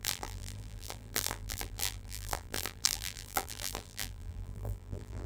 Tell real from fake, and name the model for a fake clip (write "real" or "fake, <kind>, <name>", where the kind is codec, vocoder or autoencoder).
fake, vocoder, BigVGAN v2